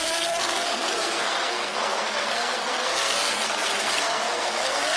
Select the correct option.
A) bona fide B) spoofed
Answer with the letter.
B